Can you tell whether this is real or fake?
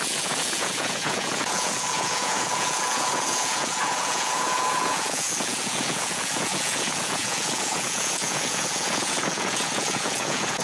fake